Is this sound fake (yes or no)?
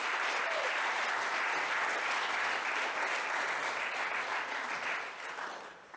yes